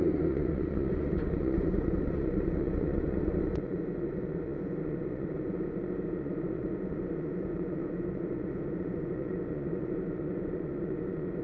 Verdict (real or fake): fake